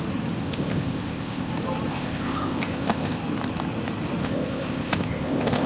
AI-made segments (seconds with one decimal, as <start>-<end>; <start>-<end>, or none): 0.4-1.5; 1.9-3.2; 4.2-5.7